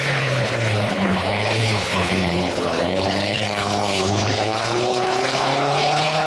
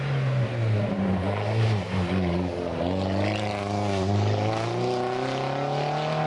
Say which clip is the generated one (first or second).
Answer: first